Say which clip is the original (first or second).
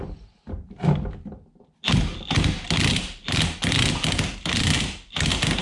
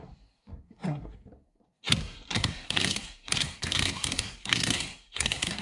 first